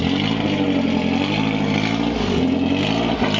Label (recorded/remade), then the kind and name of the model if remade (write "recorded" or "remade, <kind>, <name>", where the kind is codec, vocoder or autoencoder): recorded